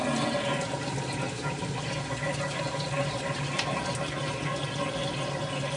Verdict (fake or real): real